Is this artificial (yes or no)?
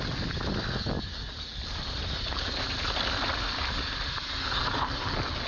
no